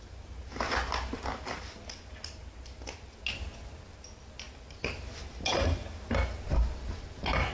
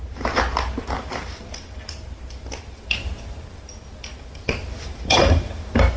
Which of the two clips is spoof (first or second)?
second